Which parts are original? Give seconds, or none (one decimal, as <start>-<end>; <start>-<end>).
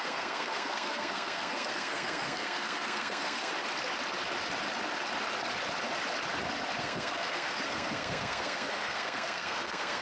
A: 3.5-6.8